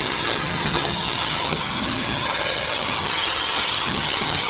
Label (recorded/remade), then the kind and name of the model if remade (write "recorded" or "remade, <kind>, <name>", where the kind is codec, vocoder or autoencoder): remade, vocoder, HiFi-GAN